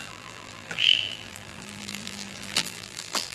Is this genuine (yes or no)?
no